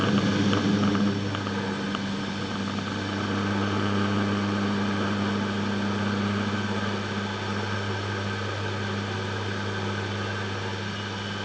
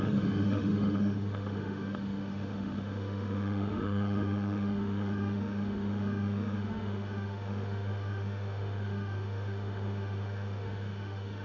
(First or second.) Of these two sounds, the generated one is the second